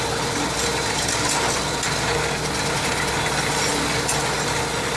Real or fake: real